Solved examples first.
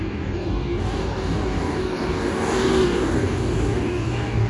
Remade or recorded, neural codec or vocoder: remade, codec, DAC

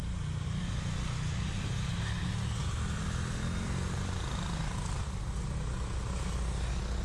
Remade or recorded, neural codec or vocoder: recorded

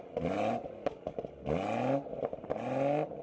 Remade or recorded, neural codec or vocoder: recorded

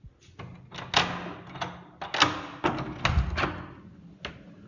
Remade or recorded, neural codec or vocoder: recorded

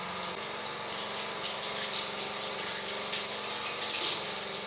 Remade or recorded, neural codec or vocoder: recorded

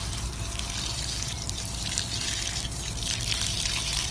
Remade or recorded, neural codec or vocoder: remade, vocoder, BigVGAN v2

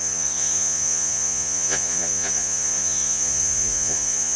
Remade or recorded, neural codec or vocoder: remade, vocoder, Vocos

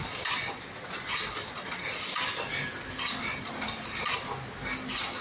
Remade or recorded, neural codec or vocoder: recorded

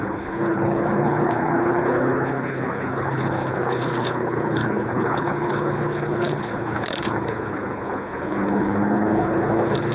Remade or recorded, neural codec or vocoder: remade, codec, HILCodec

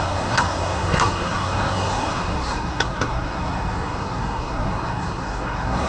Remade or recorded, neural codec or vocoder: remade, codec, SNAC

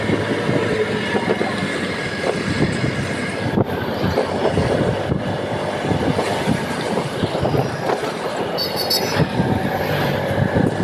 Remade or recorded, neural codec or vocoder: recorded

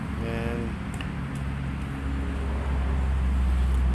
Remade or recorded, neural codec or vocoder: recorded